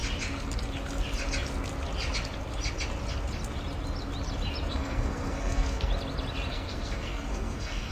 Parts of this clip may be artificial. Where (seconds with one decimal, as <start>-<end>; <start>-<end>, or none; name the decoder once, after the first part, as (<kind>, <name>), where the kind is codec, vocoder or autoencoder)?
4.7-5.9 (codec, SNAC); 6.5-7.9